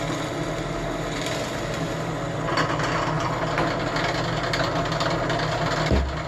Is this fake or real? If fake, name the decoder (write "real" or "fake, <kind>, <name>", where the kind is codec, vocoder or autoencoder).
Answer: real